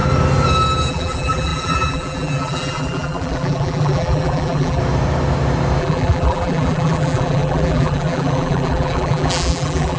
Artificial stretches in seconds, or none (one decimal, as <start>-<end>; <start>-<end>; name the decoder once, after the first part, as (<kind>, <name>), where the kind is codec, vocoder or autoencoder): 0.9-4.8 (vocoder, BigVGAN v2); 5.8-10.0